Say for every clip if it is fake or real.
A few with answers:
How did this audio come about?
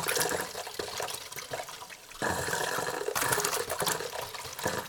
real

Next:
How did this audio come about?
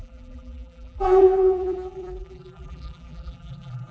fake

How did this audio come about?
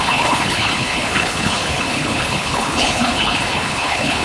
fake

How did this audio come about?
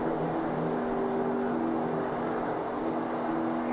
real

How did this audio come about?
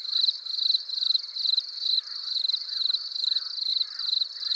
real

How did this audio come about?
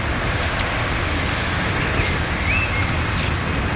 real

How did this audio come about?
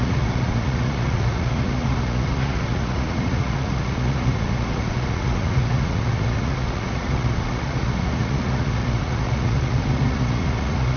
fake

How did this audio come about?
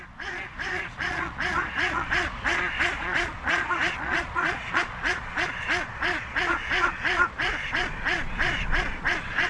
fake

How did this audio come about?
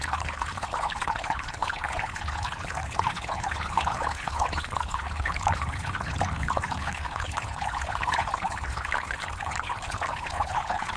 fake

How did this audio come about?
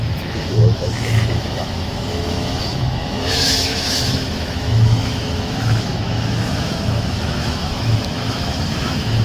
fake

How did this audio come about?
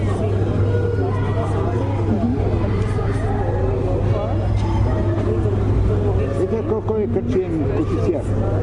real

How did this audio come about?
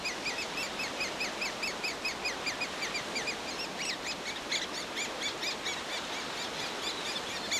real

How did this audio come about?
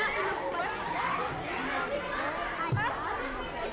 real